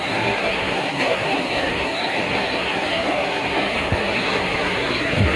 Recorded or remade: remade